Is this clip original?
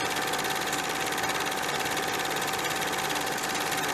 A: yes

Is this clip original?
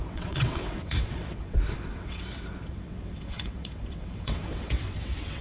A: no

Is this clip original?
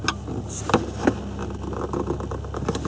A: yes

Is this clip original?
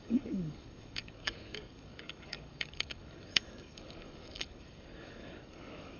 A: no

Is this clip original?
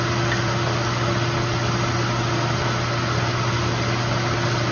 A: yes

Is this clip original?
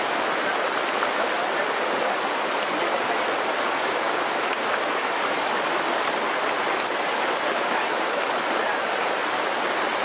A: yes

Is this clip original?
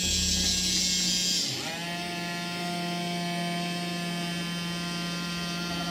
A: yes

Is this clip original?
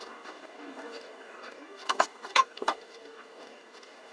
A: no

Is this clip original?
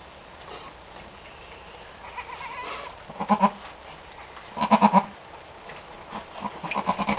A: yes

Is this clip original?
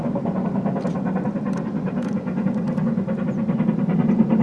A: yes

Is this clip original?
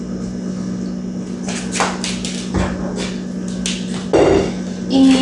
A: yes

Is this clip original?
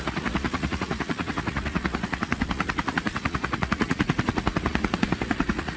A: no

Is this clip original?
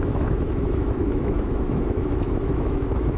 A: no